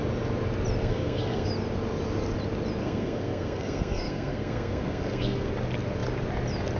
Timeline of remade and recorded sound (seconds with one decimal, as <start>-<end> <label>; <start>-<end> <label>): 0.0-0.8 recorded; 0.8-1.5 remade; 1.5-2.8 recorded; 2.8-5.5 remade; 5.5-6.8 recorded